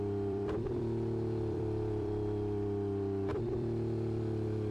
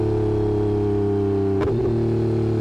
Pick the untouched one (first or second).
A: second